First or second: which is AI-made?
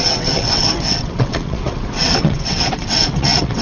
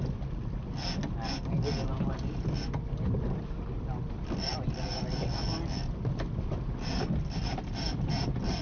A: first